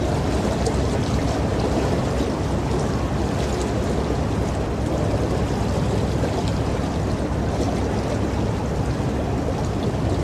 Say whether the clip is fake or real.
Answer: real